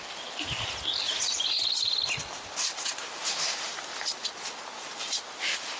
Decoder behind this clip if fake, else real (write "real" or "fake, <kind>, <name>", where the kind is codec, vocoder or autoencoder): real